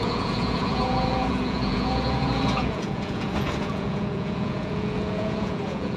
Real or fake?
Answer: fake